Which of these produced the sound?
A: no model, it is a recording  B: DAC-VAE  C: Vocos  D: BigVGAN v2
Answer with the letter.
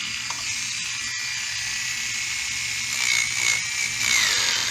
A